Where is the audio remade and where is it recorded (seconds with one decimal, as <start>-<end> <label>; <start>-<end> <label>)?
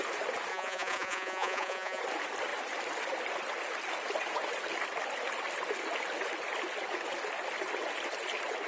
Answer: 0.0-0.5 recorded; 0.5-2.0 remade; 2.0-8.7 recorded